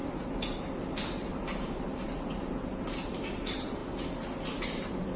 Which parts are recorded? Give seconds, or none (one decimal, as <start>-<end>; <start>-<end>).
3.8-4.6